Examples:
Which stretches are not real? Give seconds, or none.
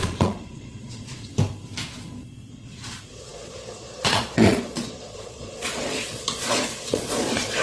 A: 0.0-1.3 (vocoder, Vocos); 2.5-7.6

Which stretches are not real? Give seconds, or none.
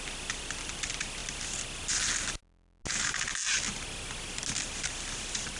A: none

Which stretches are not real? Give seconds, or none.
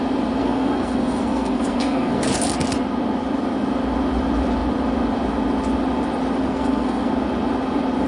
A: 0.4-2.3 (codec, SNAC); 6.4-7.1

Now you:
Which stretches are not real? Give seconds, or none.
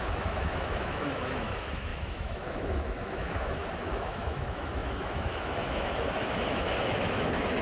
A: 0.0-7.6 (autoencoder, DAC-VAE)